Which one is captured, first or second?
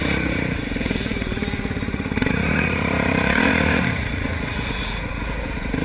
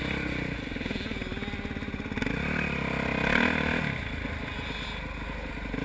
second